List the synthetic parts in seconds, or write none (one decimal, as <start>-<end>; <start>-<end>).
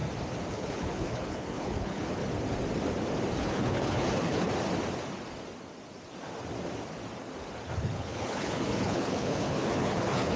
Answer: 0.5-2.2; 3.4-4.5; 7.8-10.4